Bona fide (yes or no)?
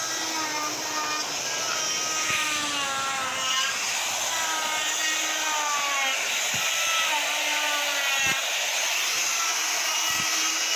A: yes